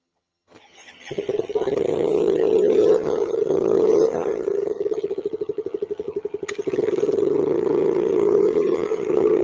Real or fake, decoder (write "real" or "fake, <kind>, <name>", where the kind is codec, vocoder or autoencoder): fake, vocoder, HiFi-GAN